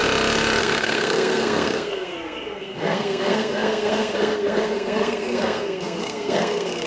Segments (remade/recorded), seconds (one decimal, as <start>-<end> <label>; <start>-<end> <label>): 0.0-0.6 recorded; 0.6-6.9 remade